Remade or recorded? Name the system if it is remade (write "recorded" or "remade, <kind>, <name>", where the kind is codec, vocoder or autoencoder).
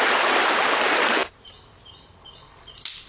remade, vocoder, BigVGAN v2